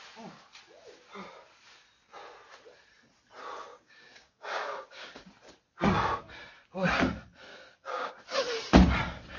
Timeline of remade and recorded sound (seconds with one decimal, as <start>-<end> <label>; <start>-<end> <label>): 0.0-3.7 recorded; 3.7-5.3 remade; 5.3-7.5 recorded; 7.5-8.1 remade; 8.1-9.4 recorded